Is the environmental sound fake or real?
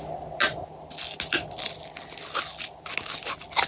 real